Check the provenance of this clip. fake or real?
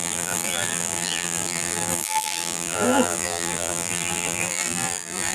fake